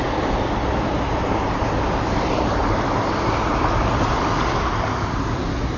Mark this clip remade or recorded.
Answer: recorded